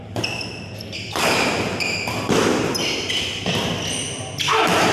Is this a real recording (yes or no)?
yes